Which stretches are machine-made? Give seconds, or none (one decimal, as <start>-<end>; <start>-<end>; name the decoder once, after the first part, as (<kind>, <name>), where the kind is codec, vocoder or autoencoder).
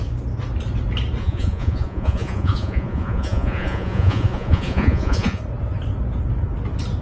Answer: 1.2-5.4 (vocoder, Vocos)